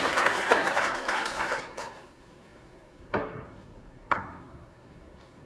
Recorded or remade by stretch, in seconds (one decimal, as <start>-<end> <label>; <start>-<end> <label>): 0.0-5.5 remade